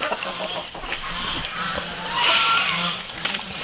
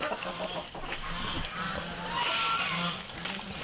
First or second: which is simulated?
first